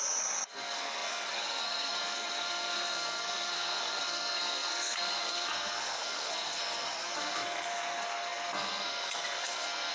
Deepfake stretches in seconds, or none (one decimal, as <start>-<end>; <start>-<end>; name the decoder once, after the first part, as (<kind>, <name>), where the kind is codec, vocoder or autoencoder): 0.0-9.9 (codec, SNAC)